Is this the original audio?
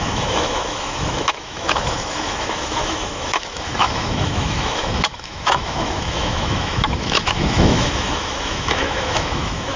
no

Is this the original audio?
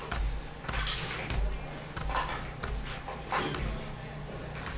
yes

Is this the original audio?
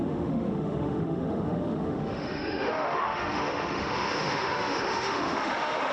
no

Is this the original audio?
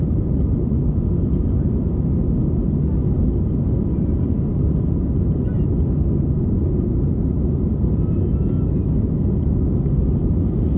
yes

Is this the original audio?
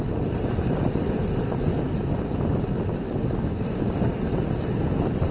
yes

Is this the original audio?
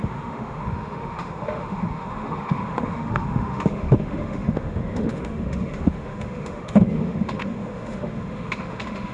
no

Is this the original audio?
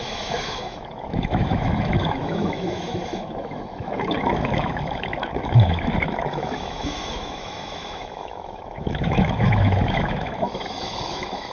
no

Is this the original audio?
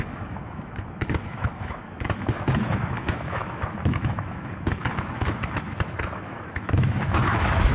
no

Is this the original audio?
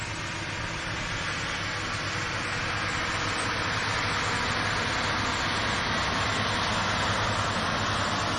yes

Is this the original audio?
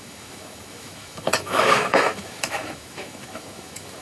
no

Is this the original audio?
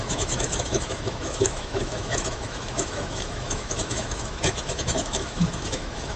no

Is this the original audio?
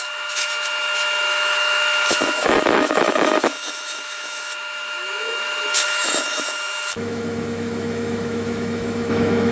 no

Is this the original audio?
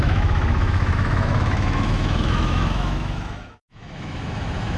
no